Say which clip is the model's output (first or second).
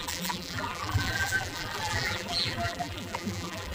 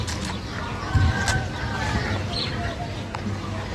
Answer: first